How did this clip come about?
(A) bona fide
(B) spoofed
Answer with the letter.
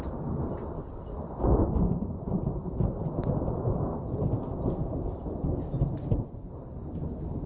A